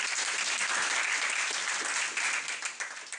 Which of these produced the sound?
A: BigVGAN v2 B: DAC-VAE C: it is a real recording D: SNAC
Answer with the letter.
C